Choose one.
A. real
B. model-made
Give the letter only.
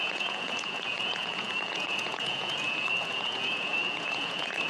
B